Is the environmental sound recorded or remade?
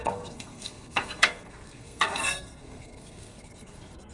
remade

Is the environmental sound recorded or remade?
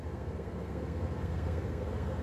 remade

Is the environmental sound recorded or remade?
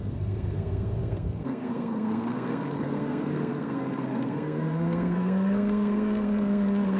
remade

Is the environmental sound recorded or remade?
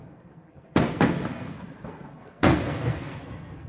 remade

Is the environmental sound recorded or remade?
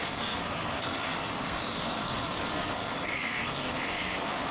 remade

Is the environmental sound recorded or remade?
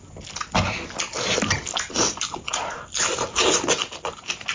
recorded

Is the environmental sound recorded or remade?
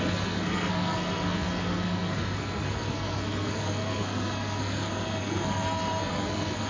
remade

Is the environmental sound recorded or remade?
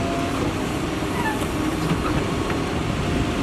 recorded